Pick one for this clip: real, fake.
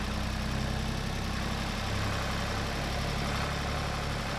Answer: real